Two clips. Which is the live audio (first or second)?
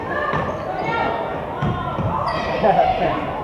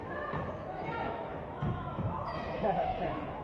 first